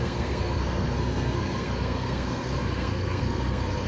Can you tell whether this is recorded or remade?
remade